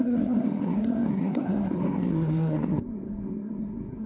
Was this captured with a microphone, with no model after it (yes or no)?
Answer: no